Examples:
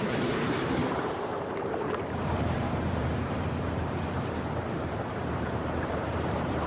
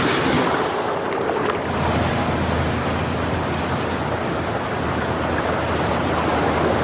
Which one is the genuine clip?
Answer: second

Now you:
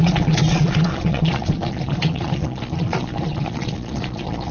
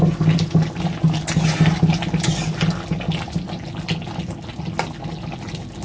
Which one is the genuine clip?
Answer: second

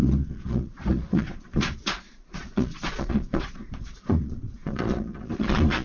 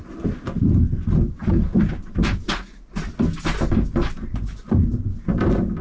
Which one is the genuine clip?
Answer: second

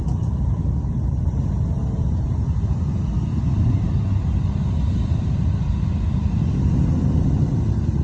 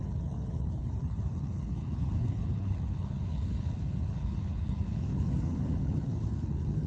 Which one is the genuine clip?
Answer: first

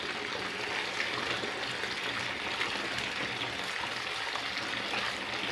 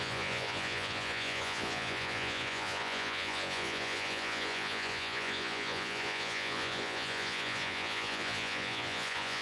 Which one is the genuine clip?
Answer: first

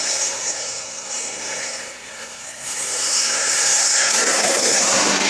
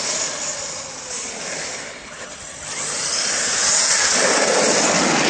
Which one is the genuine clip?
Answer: second